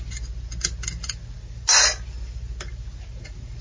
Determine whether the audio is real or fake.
real